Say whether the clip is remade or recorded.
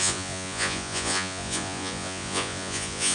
remade